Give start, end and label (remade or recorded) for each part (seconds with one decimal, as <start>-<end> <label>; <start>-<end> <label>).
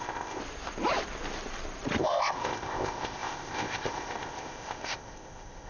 0.0-0.4 remade; 0.4-2.0 recorded; 2.0-5.7 remade